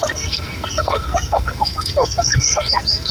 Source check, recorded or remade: remade